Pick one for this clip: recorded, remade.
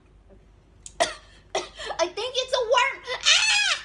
recorded